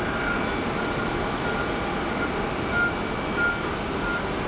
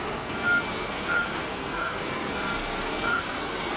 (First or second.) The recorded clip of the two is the first